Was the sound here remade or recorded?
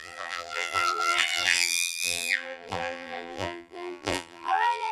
remade